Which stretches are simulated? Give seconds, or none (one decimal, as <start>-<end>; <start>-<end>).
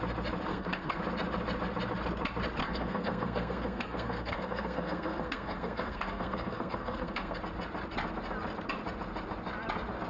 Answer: 0.5-1.0; 2.6-7.4